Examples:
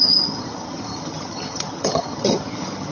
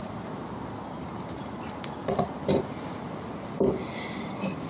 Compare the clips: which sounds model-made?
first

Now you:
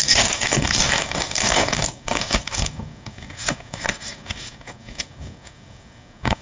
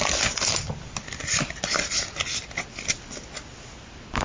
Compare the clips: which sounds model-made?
first